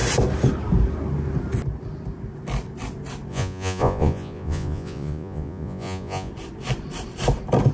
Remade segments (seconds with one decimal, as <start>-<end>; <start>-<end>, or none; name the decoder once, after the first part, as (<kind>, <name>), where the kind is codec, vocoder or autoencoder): 3.3-6.3 (vocoder, Vocos)